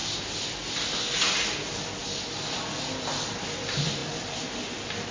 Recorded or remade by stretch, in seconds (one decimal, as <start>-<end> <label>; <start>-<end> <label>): 0.0-5.1 recorded